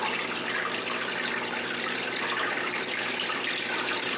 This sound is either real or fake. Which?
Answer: real